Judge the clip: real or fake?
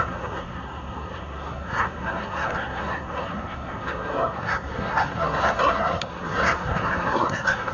fake